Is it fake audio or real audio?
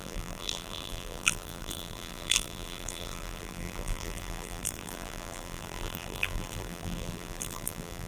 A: fake